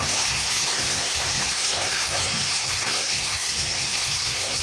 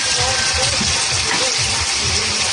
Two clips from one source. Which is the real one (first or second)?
second